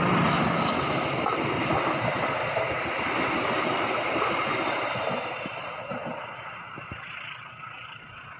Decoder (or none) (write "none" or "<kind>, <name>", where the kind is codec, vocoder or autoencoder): none